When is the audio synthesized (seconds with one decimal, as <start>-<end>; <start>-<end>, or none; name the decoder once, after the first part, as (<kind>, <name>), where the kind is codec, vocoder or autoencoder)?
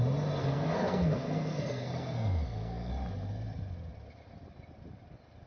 0.4-2.9 (codec, SNAC)